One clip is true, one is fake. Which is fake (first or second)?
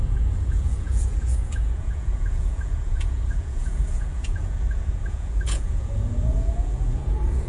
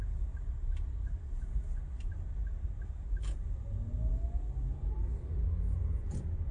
first